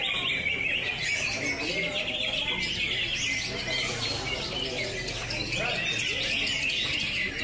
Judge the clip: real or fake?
real